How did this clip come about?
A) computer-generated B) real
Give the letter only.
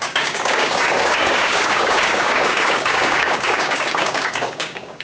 A